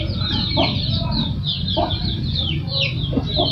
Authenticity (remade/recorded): recorded